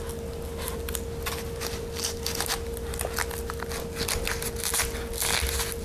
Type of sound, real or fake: real